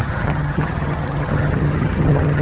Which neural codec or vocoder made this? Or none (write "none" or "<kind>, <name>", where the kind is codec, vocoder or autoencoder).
vocoder, HiFi-GAN